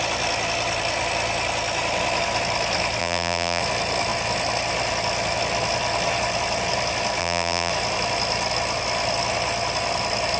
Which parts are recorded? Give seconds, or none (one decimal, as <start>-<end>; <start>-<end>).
0.0-3.0; 3.6-7.2; 7.7-10.4